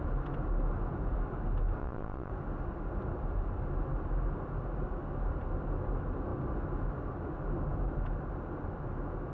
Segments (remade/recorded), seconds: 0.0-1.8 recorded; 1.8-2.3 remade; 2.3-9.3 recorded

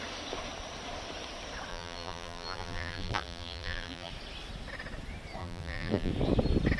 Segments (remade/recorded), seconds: 0.0-1.7 recorded; 1.7-4.1 remade; 4.1-5.4 recorded; 5.4-6.1 remade; 6.1-6.8 recorded

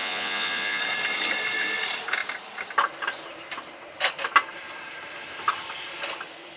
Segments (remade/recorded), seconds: 0.0-0.8 remade; 0.8-6.6 recorded

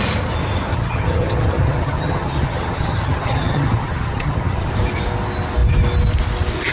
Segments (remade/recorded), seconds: 0.0-0.7 recorded; 0.7-4.7 remade; 4.7-6.7 recorded

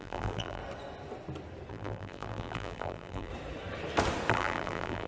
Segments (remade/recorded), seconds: 0.0-0.6 remade; 0.6-1.7 recorded; 1.7-3.3 remade; 3.3-4.3 recorded; 4.3-5.1 remade

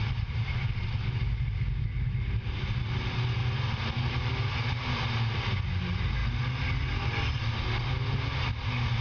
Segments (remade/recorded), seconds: 0.0-9.0 recorded